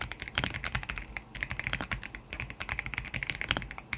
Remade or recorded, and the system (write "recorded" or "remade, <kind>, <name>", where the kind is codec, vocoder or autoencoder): recorded